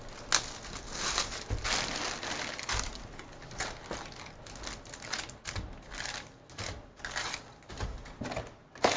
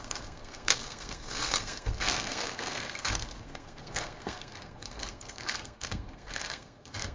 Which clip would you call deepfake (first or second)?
second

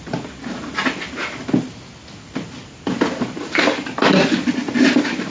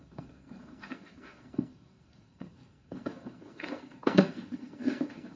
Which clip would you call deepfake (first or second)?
second